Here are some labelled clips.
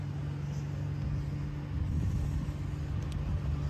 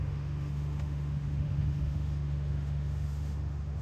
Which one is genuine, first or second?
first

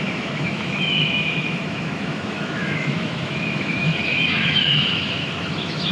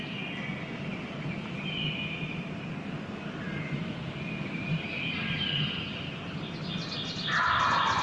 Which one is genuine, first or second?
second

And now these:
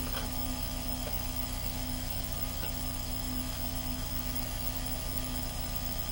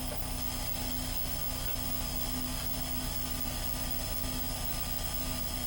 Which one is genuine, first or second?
second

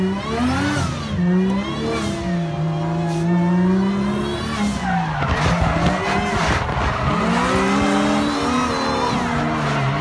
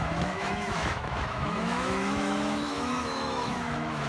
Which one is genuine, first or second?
first